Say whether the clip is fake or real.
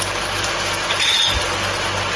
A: real